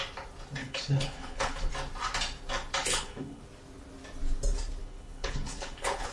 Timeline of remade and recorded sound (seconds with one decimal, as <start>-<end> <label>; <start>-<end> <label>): 0.0-0.6 recorded; 0.6-1.7 remade; 1.7-2.8 recorded; 2.8-3.4 remade; 3.4-4.8 recorded; 4.8-6.1 remade